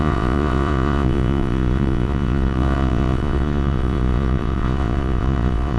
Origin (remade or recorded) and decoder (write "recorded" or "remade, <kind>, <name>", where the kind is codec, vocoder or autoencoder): remade, vocoder, Vocos